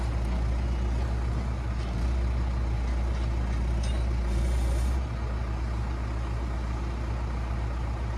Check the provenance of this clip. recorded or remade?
recorded